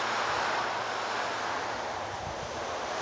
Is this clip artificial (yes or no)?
no